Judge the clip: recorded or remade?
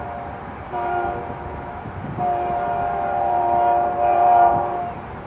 remade